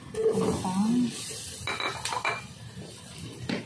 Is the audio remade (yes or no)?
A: no